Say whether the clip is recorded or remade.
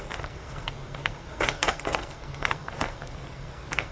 remade